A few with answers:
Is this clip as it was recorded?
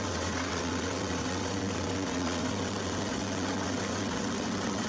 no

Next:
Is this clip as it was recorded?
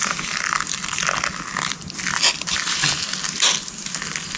yes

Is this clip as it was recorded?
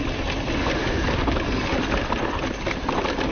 yes